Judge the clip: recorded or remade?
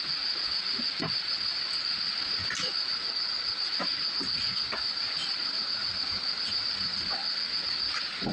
recorded